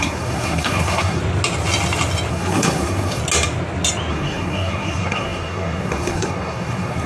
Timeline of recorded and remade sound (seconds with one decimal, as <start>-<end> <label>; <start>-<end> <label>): 0.0-1.2 remade; 1.2-2.3 recorded; 2.3-3.2 remade; 3.2-4.1 recorded; 4.1-7.1 remade